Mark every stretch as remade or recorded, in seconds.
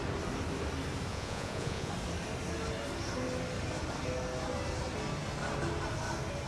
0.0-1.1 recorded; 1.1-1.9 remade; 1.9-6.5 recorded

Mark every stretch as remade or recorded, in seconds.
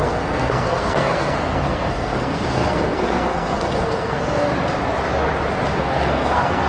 0.0-4.5 remade; 4.5-5.8 recorded; 5.8-6.7 remade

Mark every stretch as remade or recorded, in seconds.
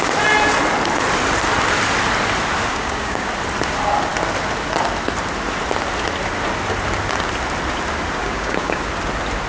0.0-2.7 recorded; 2.7-3.3 remade; 3.3-8.2 recorded; 8.2-8.8 remade; 8.8-9.5 recorded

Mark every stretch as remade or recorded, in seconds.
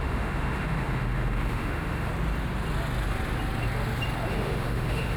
0.0-2.1 remade; 2.1-4.3 recorded; 4.3-5.2 remade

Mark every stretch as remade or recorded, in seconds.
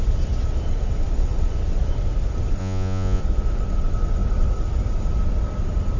0.0-2.6 recorded; 2.6-3.2 remade; 3.2-6.0 recorded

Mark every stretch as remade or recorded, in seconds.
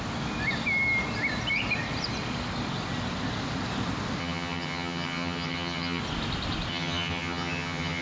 0.0-4.2 recorded; 4.2-6.0 remade; 6.0-6.7 recorded; 6.7-8.0 remade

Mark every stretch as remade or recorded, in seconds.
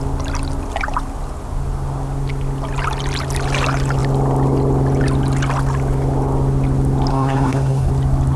0.0-7.1 recorded; 7.1-7.9 remade; 7.9-8.4 recorded